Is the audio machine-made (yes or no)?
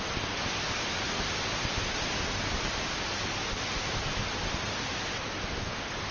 no